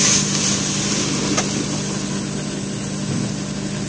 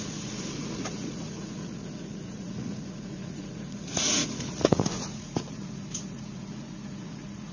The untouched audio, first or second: first